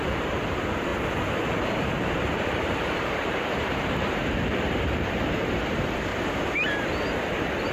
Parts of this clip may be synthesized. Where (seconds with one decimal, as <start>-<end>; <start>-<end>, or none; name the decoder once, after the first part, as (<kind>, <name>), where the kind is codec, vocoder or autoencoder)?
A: 0.0-6.1 (vocoder, BigVGAN v2); 7.3-7.7